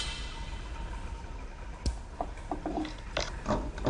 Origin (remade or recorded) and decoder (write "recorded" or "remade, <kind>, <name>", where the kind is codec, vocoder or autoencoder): recorded